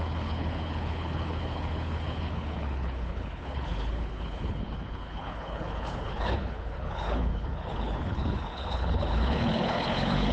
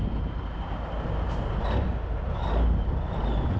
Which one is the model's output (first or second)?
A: first